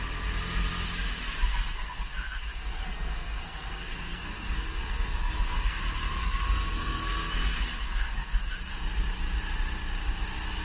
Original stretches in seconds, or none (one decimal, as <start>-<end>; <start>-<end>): 0.0-1.5; 5.8-6.2; 8.5-10.6

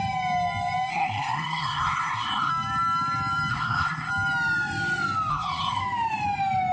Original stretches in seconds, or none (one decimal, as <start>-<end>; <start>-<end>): 0.0-0.9; 2.5-3.5; 4.1-5.3; 5.8-6.7

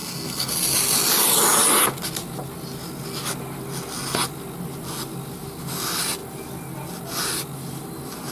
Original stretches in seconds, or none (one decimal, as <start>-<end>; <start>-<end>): 0.5-8.3

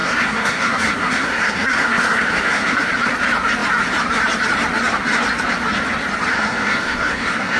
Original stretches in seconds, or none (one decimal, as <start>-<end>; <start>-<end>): 2.9-6.3

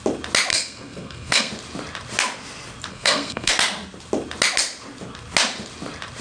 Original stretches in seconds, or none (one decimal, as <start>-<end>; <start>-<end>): 0.0-0.5; 1.5-2.9; 3.5-6.2